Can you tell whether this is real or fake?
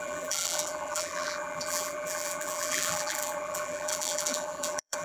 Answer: fake